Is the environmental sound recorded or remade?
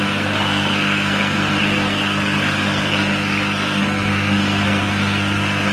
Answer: remade